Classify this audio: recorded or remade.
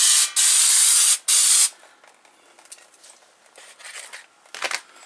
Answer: recorded